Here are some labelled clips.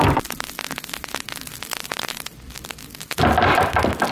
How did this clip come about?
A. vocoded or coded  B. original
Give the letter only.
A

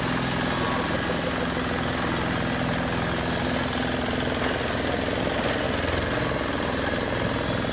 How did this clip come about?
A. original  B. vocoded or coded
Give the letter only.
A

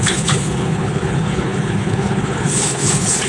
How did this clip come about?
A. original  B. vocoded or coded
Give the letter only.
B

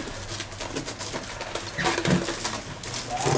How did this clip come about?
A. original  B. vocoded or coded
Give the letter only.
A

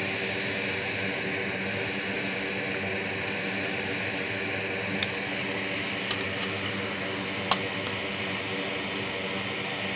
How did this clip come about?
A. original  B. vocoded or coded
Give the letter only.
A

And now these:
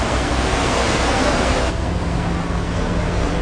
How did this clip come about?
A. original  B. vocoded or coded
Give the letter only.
B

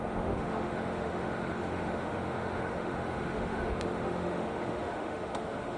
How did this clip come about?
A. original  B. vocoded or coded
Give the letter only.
B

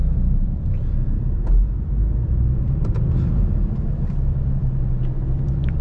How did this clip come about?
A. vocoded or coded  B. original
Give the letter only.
A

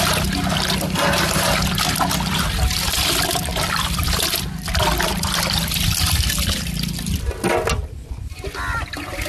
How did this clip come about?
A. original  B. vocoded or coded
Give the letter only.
A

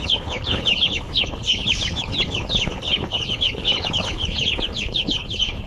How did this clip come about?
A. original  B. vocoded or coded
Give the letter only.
B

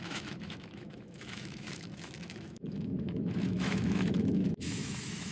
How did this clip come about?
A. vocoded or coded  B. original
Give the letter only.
A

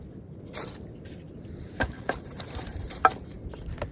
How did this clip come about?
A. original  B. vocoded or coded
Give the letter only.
B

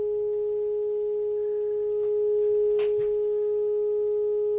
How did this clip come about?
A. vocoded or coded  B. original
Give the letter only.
B